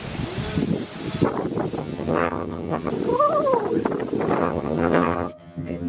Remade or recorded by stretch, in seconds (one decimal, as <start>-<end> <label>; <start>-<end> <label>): 0.0-1.8 recorded; 1.8-2.9 remade; 2.9-4.4 recorded; 4.4-5.9 remade